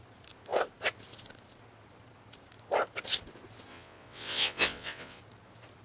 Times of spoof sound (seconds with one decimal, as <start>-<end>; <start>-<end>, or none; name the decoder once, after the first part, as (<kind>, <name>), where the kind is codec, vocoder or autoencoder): 3.7-5.2 (vocoder, WaveNeXt)